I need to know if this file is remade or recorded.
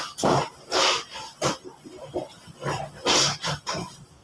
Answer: recorded